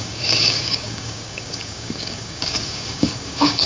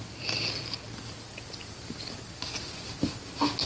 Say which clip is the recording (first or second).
second